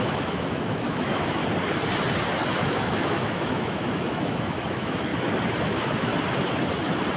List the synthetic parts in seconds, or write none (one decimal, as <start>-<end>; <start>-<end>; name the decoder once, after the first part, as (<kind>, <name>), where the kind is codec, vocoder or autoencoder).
0.0-1.4 (autoencoder, DAC-VAE); 2.5-5.1; 5.6-6.1